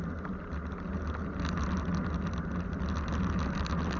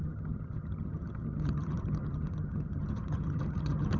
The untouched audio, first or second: first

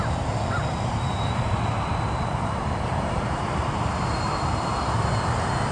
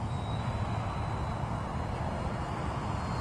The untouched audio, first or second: second